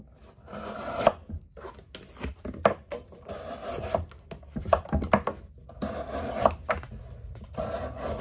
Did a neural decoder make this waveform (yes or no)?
no